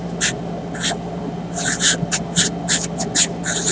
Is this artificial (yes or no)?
no